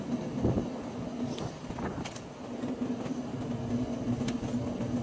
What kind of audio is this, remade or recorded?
recorded